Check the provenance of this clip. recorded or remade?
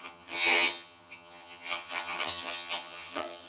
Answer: remade